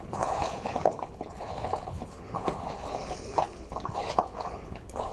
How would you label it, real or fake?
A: fake